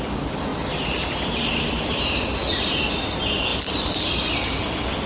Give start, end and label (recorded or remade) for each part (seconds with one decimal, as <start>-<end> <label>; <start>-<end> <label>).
0.0-5.1 recorded